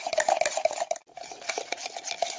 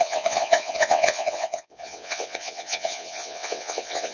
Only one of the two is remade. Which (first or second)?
second